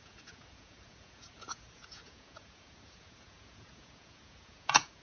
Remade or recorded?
remade